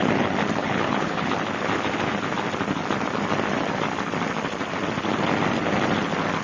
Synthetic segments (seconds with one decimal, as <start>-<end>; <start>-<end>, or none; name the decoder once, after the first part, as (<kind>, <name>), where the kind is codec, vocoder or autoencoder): 0.6-1.3 (codec, HILCodec)